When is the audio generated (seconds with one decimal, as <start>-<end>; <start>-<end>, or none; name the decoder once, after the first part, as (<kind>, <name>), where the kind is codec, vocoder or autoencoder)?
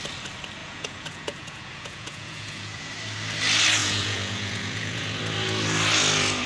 0.6-2.9 (vocoder, Vocos); 3.8-5.2